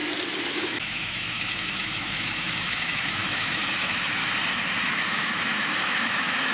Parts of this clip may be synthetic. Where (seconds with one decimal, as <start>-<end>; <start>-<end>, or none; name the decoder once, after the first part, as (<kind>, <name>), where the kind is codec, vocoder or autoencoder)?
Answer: 0.5-4.2 (autoencoder, DAC-VAE); 4.9-6.5